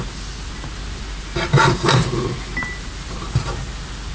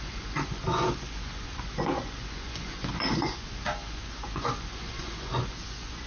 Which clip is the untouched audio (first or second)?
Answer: first